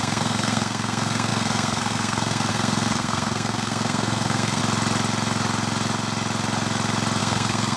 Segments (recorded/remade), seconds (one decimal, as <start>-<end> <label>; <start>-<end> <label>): 0.0-4.6 remade; 4.6-7.2 recorded; 7.2-7.8 remade